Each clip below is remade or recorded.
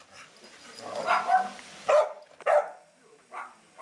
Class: recorded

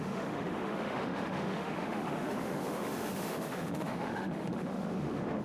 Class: remade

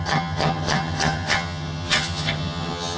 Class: remade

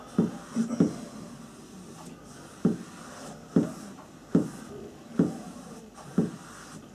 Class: recorded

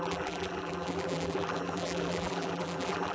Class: remade